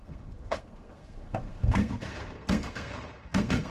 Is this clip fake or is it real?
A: fake